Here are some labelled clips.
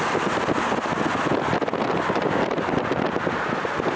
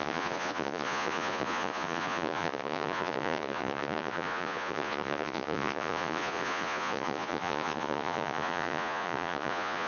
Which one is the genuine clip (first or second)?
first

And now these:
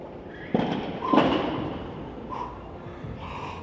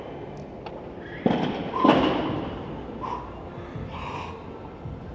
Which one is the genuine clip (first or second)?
second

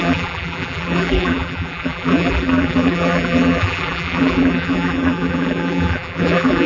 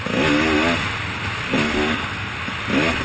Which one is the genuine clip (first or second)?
second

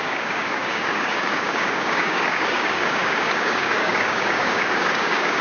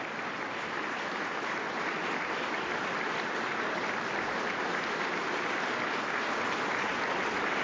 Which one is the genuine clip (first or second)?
second